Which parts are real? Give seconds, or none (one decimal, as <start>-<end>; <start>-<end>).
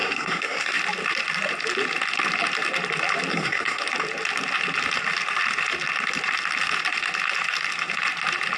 0.8-3.3; 3.8-8.6